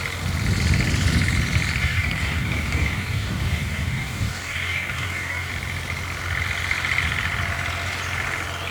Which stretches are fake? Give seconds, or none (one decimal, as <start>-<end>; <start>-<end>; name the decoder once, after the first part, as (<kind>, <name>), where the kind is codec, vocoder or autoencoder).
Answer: 1.8-5.5 (codec, DAC)